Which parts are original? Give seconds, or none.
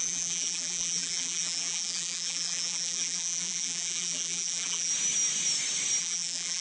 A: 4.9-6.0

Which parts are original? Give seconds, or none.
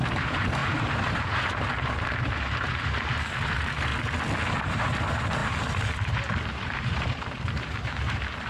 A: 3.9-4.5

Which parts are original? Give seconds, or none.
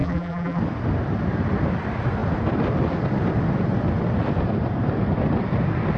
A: 0.6-6.0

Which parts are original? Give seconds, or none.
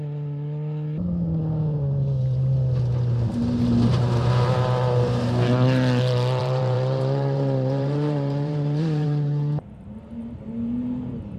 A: 0.0-6.4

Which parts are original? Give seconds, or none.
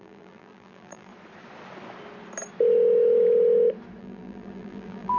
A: 1.1-4.0